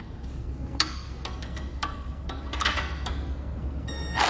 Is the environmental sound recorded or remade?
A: remade